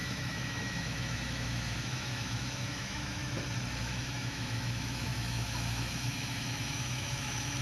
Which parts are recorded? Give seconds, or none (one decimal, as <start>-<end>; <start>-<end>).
3.2-3.8